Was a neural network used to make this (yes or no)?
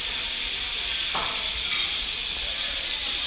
no